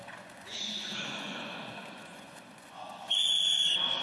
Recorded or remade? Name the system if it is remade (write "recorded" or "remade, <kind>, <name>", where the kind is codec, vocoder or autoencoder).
remade, vocoder, Vocos